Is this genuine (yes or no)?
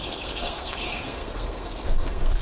no